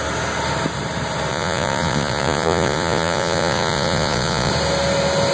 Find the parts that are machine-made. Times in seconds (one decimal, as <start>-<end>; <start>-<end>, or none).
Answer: 1.3-4.5

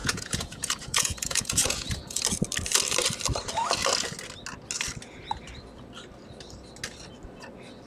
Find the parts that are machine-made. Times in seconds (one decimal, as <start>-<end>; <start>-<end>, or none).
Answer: 0.0-2.2

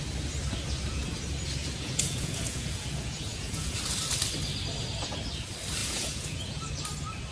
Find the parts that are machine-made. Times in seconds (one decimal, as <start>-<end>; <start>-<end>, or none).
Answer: 1.6-3.7; 5.8-6.6

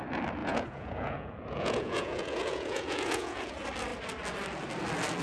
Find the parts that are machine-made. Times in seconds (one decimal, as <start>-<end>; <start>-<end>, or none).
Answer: 0.4-3.5